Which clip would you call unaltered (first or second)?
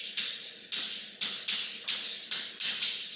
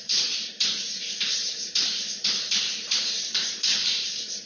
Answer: first